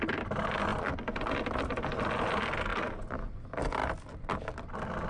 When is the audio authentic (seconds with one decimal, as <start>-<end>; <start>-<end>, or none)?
0.0-5.1